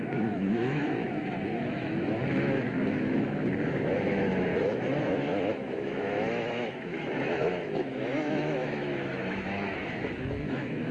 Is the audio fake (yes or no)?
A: yes